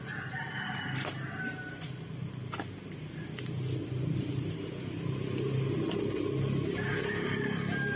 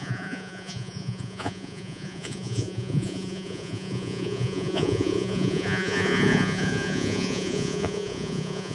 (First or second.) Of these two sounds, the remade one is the second